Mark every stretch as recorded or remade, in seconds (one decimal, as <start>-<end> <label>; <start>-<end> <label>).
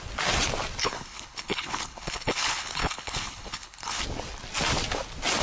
0.0-0.8 recorded; 0.8-4.0 remade; 4.0-5.4 recorded